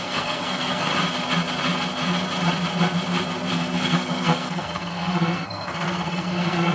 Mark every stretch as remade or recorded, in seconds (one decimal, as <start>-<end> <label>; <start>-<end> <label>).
0.0-0.9 remade; 0.9-3.5 recorded; 3.5-6.7 remade